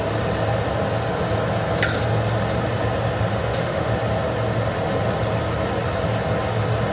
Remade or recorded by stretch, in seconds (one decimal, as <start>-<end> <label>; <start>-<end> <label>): 0.0-3.3 recorded; 3.3-3.9 remade; 3.9-6.9 recorded

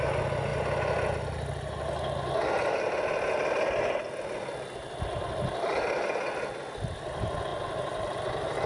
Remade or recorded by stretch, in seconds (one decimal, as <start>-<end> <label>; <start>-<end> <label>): 0.0-8.7 recorded

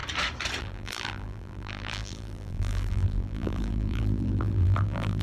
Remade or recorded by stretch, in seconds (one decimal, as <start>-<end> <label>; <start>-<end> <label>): 0.0-0.6 recorded; 0.6-5.2 remade

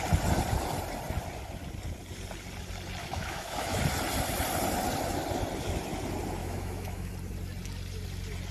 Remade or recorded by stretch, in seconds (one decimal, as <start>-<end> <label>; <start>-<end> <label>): 0.0-3.0 recorded; 3.0-3.8 remade; 3.8-6.4 recorded; 6.4-7.1 remade; 7.1-8.5 recorded

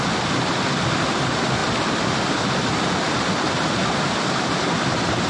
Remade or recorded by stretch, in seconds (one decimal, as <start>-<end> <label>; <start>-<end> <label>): 0.0-5.3 recorded

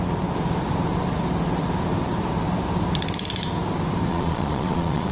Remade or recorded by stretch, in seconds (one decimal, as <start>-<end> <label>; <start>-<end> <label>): 0.0-4.1 recorded; 4.1-5.1 remade

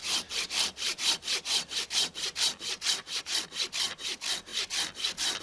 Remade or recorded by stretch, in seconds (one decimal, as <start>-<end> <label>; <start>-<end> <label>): 0.0-3.2 remade; 3.2-5.4 recorded